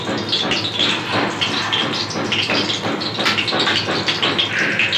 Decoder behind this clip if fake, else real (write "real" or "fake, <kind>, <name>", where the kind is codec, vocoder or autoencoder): real